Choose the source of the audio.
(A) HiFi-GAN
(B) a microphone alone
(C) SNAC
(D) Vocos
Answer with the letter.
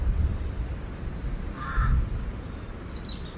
B